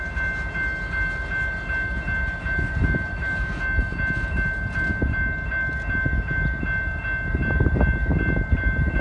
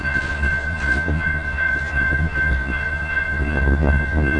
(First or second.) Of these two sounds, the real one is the first